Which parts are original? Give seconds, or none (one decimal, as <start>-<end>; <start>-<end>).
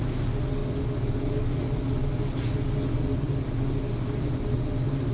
0.0-5.1